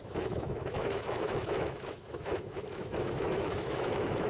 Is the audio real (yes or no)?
no